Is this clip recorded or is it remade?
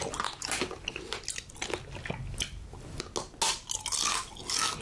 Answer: recorded